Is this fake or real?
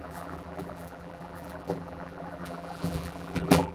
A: fake